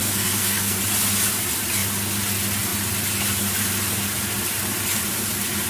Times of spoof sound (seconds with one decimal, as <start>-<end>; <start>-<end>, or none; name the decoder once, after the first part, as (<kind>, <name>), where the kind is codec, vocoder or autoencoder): 0.0-0.8 (codec, SNAC)